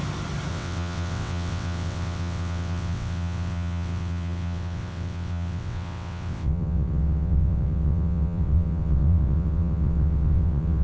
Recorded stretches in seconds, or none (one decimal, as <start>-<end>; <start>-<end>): 0.0-0.5